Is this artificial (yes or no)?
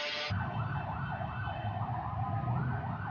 no